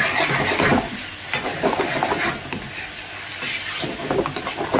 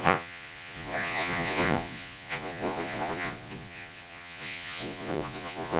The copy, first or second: second